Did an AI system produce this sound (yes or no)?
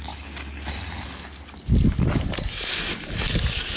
no